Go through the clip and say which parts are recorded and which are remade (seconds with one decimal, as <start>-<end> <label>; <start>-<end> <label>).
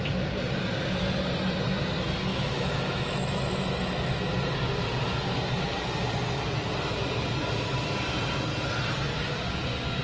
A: 0.0-2.3 recorded; 2.3-4.3 remade; 4.3-10.0 recorded